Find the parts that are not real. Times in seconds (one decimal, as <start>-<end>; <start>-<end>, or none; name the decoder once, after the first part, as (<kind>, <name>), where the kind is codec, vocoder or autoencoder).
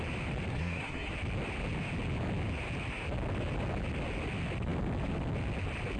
0.5-1.1 (codec, SNAC)